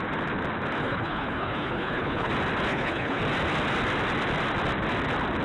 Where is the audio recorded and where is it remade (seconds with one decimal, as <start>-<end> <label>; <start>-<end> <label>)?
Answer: 0.0-0.8 recorded; 0.8-2.3 remade; 2.3-2.7 recorded; 2.7-3.2 remade; 3.2-5.4 recorded